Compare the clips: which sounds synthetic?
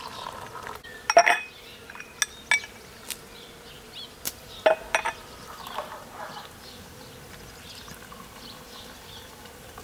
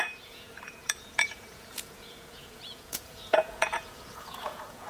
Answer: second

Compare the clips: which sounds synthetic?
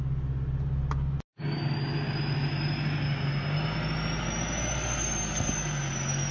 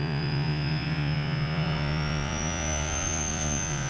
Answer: second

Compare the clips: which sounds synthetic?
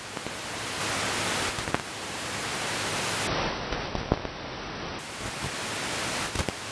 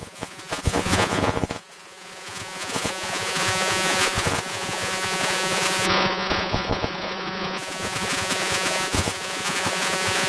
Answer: second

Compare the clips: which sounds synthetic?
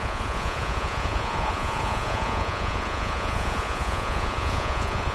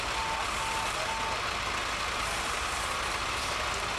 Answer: first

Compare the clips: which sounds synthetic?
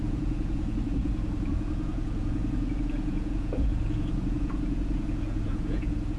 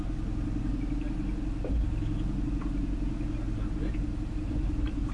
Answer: first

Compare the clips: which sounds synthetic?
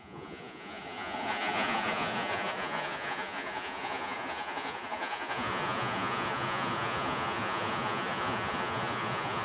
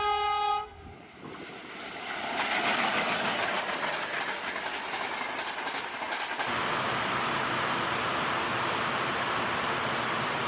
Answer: first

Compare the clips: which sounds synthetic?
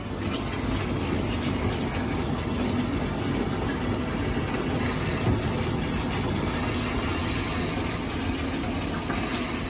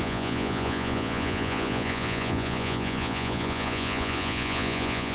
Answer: second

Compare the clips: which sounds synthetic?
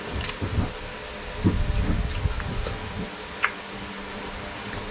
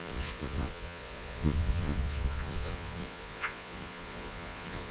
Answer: second